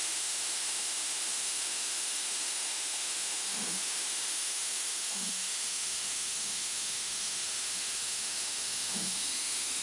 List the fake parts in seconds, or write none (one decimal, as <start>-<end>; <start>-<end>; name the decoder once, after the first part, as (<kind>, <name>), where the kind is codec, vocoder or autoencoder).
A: 0.0-9.8 (autoencoder, DAC-VAE)